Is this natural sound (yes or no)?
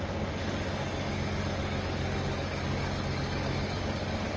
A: no